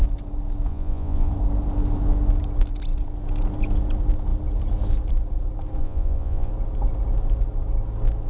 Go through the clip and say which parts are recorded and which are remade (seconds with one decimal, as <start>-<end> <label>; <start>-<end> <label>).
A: 0.0-0.7 recorded; 0.7-1.3 remade; 1.3-5.8 recorded; 5.8-6.5 remade; 6.5-8.3 recorded